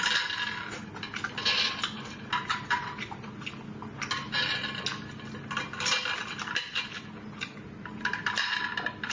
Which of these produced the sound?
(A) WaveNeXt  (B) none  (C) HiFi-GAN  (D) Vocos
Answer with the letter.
B